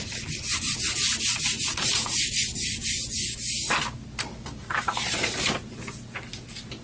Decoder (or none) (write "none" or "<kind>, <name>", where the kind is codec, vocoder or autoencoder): none